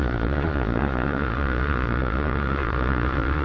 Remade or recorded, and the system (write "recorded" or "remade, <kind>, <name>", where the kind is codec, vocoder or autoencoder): remade, vocoder, Vocos